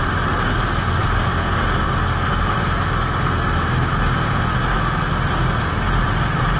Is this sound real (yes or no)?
yes